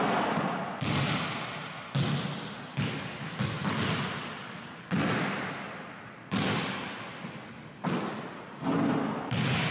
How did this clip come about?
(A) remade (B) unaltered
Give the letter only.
B